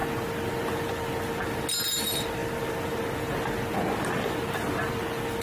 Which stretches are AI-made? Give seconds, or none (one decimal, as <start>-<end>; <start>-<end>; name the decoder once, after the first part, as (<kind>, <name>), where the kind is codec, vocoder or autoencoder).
0.0-0.5 (vocoder, BigVGAN v2)